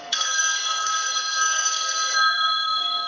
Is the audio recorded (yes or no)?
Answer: no